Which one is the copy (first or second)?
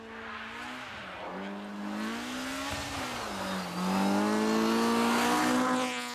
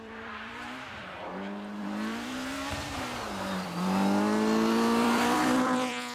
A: second